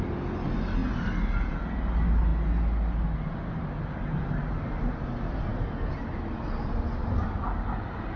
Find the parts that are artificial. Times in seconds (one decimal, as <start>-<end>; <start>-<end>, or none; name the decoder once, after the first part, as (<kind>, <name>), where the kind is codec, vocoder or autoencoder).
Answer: none